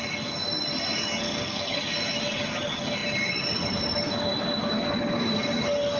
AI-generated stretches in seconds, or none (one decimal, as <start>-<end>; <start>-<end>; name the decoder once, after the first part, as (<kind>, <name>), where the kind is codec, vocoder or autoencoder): 1.2-1.8 (codec, SNAC)